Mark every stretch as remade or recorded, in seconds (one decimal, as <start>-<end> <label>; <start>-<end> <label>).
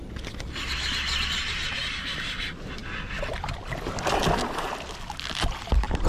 0.0-6.1 recorded